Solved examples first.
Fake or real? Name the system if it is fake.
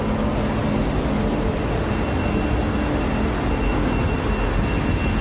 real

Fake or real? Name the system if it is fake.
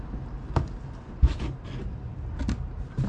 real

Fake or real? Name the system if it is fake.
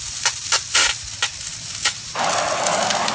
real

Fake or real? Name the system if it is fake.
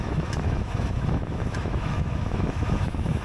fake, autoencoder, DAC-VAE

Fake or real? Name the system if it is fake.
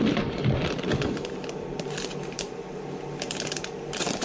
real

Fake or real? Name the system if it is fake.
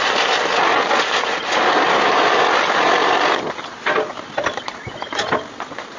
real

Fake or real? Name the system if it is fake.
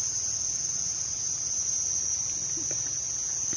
real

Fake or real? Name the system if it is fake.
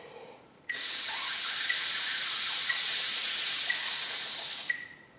fake, vocoder, Vocos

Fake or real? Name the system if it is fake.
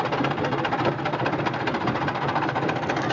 real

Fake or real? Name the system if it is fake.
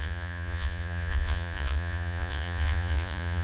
fake, vocoder, Vocos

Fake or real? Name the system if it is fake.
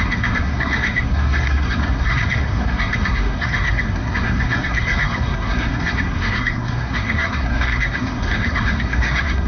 fake, codec, SNAC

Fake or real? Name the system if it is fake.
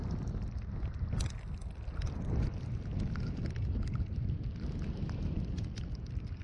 real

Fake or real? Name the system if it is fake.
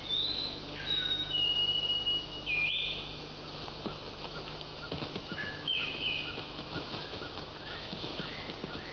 fake, autoencoder, DAC-VAE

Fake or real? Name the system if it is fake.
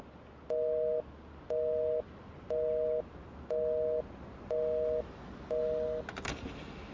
real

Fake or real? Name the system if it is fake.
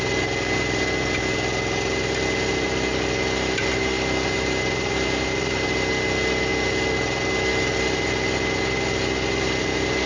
real